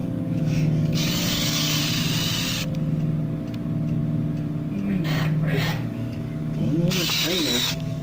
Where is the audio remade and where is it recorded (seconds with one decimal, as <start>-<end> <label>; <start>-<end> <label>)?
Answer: 0.0-1.8 remade; 1.8-5.7 recorded; 5.7-8.0 remade